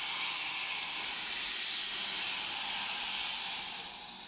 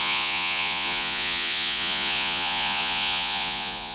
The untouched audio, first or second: first